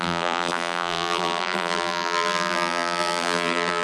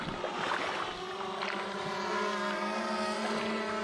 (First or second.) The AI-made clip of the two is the first